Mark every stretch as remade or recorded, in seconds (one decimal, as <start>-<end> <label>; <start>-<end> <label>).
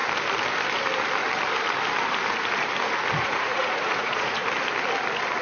0.0-3.2 recorded; 3.2-4.4 remade; 4.4-5.4 recorded